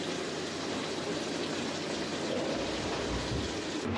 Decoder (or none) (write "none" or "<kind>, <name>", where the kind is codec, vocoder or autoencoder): none